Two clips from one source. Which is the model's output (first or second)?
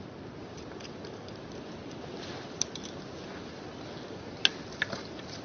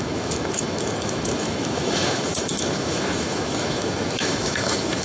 second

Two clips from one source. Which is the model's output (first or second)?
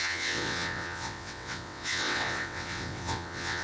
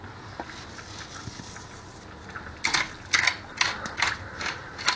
first